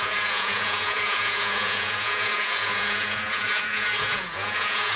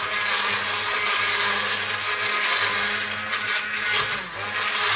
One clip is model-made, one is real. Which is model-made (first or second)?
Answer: first